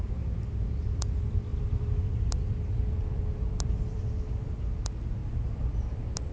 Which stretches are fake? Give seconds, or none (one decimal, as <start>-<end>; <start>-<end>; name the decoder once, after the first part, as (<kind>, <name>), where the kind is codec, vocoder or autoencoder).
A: 1.5-4.1 (vocoder, BigVGAN v2); 5.2-6.3